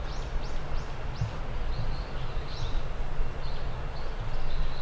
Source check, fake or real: real